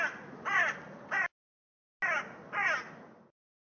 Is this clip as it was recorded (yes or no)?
yes